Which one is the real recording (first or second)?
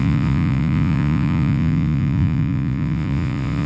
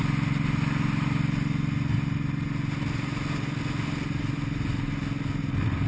second